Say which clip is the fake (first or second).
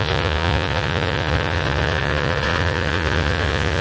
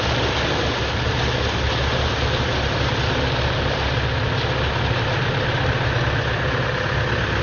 first